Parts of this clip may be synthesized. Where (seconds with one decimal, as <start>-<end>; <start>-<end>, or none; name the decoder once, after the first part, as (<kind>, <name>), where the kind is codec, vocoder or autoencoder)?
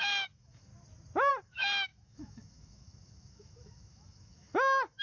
0.0-0.7 (autoencoder, DAC-VAE); 1.3-5.0